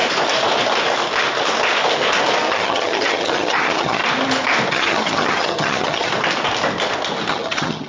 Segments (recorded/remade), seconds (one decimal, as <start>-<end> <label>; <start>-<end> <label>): 0.0-2.5 recorded; 2.5-4.0 remade; 4.0-4.7 recorded; 4.7-6.1 remade; 6.1-7.3 recorded; 7.3-7.9 remade